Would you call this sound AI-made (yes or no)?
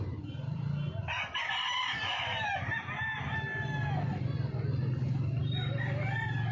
no